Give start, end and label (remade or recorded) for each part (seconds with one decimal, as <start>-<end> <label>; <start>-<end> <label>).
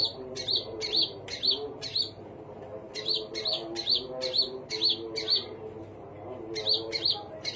0.0-1.3 remade; 1.3-7.6 recorded